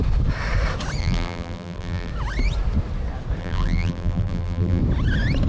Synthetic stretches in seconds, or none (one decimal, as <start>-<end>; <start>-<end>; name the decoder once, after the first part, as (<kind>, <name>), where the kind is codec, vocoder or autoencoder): 1.0-2.1 (vocoder, BigVGAN v2); 3.4-4.8